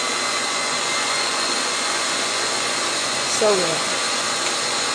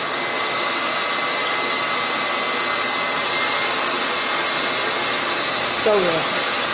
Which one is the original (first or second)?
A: second